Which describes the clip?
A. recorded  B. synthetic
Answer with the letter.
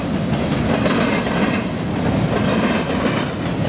A